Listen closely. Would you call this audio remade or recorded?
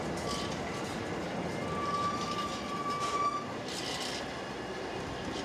recorded